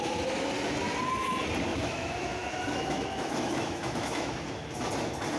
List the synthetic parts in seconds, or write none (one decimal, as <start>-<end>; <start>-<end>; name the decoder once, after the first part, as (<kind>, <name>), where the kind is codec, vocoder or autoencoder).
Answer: 1.7-4.9 (autoencoder, DAC-VAE)